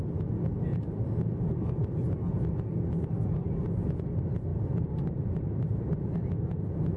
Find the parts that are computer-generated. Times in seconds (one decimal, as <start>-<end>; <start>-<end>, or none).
0.7-1.3; 4.5-6.0